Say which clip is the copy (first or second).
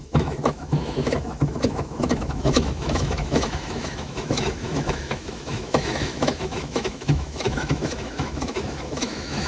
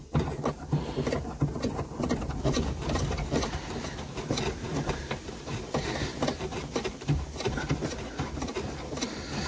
first